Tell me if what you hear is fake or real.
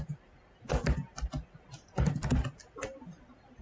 real